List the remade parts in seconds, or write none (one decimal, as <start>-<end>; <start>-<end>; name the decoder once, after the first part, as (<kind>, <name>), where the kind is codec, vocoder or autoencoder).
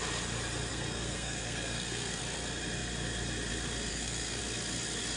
0.7-2.2 (codec, SNAC); 3.9-4.4